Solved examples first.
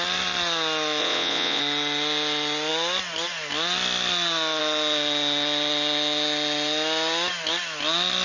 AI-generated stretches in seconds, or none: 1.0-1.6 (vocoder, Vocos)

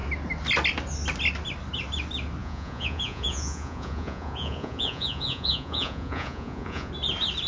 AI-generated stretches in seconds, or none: 2.4-6.9 (vocoder, Vocos)

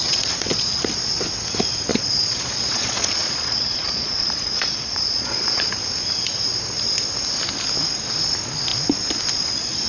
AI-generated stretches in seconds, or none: 0.0-0.8 (vocoder, Vocos); 1.9-5.7

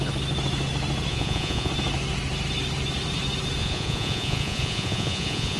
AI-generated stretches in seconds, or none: 1.1-1.7 (vocoder, Vocos); 3.6-5.6

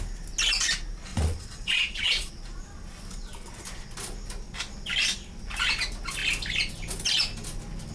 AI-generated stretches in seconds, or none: 1.1-2.3 (vocoder, Vocos)

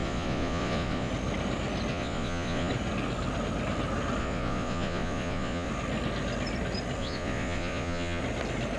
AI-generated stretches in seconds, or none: 0.0-1.1 (vocoder, Vocos); 1.9-2.7; 4.2-5.7; 7.0-8.2